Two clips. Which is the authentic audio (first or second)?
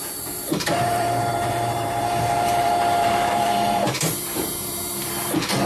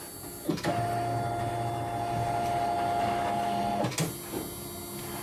second